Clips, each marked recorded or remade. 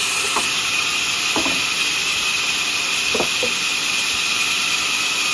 recorded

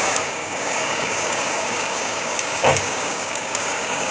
remade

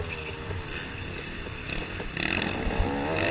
recorded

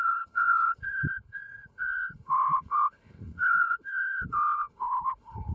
remade